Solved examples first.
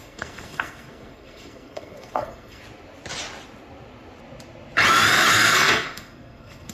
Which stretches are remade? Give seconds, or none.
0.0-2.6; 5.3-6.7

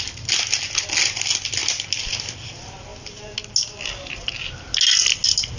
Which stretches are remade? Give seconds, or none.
none

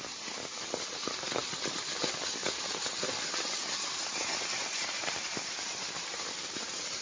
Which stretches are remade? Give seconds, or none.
2.4-5.1